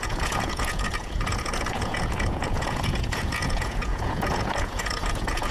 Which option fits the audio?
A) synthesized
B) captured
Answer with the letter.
A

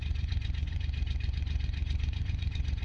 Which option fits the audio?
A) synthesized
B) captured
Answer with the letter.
A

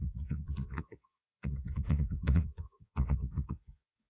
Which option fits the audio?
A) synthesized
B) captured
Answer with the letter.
A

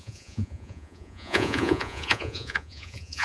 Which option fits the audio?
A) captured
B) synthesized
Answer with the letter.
B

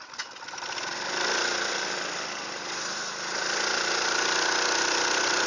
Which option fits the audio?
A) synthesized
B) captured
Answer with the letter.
B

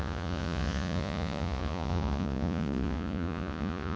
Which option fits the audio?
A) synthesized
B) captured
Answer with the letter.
A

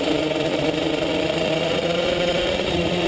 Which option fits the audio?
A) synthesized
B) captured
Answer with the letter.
A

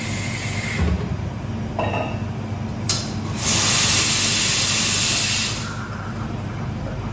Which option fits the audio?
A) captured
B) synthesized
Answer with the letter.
A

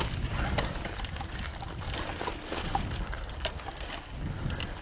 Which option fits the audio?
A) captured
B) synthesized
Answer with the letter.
A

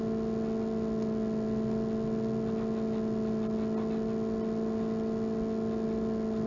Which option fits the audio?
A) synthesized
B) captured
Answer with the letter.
B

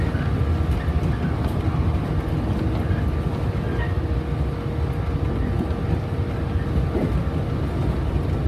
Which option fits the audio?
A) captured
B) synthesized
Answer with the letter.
A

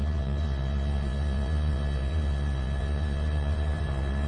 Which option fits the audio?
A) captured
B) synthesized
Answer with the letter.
B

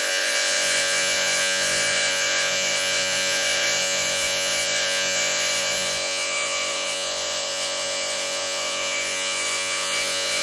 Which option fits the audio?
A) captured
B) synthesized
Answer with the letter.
B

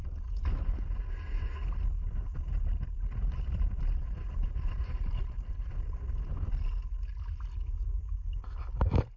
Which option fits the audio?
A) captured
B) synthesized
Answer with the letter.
A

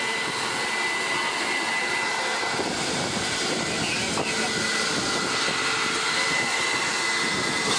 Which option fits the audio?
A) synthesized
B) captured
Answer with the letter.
B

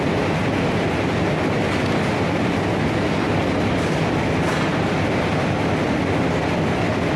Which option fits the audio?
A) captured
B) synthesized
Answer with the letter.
A